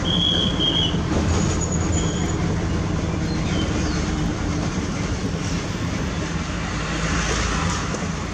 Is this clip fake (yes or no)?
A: no